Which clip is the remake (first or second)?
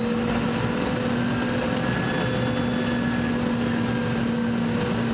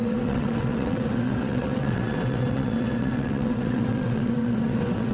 second